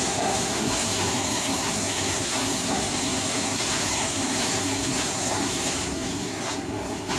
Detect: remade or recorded remade